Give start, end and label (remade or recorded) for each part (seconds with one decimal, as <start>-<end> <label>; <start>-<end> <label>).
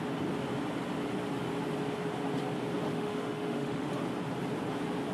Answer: 0.0-2.9 recorded; 2.9-3.9 remade; 3.9-5.1 recorded